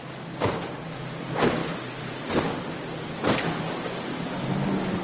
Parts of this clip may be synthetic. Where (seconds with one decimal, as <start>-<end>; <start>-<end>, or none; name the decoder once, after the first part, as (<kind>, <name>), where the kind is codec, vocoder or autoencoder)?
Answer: none